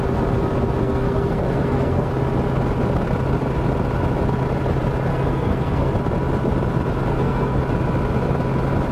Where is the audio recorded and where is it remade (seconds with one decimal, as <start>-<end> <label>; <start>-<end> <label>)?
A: 0.0-0.8 recorded; 0.8-2.1 remade; 2.1-5.1 recorded; 5.1-5.9 remade; 5.9-7.1 recorded; 7.1-7.6 remade; 7.6-8.9 recorded